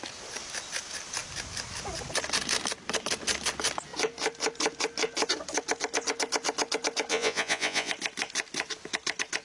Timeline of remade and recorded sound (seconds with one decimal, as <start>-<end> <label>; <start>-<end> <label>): 0.0-7.1 recorded; 7.1-7.9 remade; 7.9-9.4 recorded